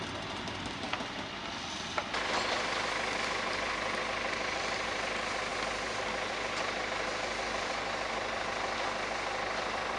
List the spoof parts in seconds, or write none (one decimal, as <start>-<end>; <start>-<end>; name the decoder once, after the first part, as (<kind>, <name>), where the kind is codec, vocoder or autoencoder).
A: none